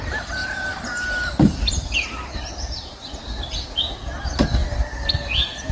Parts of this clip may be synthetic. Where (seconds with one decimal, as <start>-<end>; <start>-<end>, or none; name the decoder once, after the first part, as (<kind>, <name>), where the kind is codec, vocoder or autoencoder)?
0.4-3.2 (vocoder, BigVGAN v2); 4.6-5.7